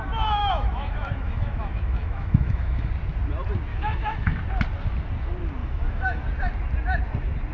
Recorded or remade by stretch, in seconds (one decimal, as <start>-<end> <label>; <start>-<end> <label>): 0.0-0.4 recorded; 0.4-2.9 remade; 2.9-3.7 recorded; 3.7-4.4 remade; 4.4-5.6 recorded; 5.6-6.2 remade; 6.2-7.5 recorded